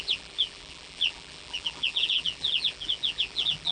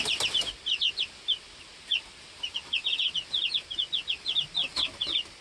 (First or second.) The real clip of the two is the second